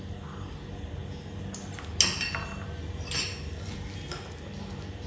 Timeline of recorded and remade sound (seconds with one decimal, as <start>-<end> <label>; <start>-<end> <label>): 0.0-5.1 recorded